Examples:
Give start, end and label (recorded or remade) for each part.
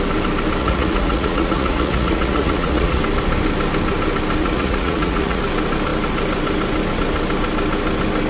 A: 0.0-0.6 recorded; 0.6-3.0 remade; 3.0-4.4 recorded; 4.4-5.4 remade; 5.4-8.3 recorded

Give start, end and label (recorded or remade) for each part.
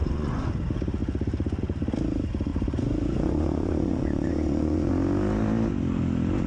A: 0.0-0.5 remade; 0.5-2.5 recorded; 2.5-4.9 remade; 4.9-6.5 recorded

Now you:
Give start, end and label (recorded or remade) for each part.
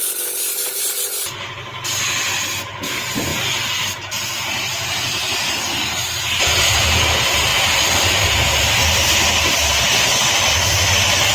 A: 0.0-3.3 recorded; 3.3-6.4 remade; 6.4-11.3 recorded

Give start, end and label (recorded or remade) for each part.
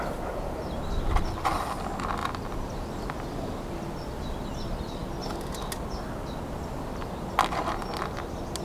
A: 0.0-8.6 recorded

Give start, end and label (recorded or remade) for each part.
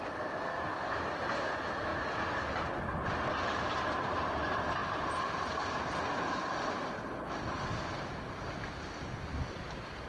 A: 0.0-10.1 recorded